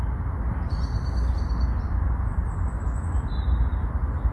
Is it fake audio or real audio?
real